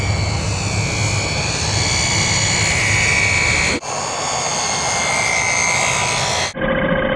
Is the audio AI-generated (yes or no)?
no